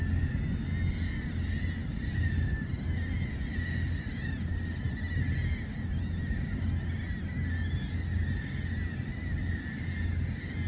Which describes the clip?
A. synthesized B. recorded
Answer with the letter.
B